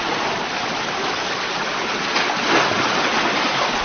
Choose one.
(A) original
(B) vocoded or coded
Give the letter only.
A